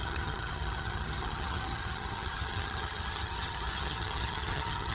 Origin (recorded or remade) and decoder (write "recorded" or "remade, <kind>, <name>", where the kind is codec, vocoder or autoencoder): remade, vocoder, HiFi-GAN